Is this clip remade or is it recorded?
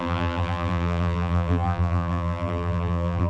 remade